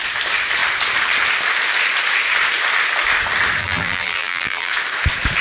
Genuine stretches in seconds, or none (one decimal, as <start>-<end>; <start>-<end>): 0.0-3.6; 4.7-5.4